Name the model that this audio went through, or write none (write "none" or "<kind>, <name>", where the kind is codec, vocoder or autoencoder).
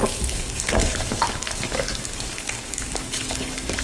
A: codec, DAC